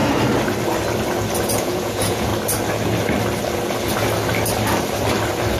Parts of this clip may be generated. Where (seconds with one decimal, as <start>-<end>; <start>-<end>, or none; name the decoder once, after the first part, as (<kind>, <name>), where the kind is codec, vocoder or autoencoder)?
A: 1.5-2.3 (vocoder, Vocos)